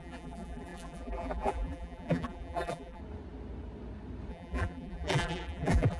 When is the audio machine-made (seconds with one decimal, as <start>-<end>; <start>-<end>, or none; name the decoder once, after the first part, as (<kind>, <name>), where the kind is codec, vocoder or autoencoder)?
0.0-3.0 (vocoder, BigVGAN v2); 4.3-6.0